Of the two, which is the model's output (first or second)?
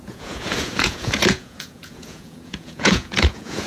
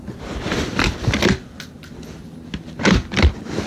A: first